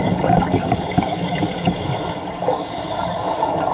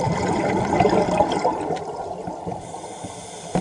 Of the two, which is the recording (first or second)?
second